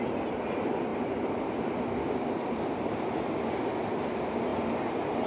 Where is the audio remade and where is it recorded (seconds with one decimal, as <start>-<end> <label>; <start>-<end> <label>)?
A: 0.0-5.3 recorded